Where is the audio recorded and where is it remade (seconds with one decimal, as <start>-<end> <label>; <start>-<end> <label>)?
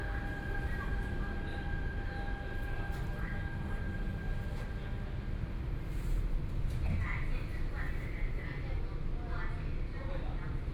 0.0-10.7 recorded